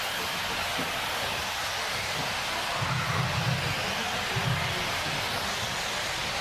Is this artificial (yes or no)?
no